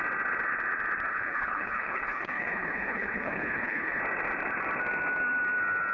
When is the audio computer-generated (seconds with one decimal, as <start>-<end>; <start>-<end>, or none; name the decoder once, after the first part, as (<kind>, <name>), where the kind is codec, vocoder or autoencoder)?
1.1-4.0 (codec, HILCodec)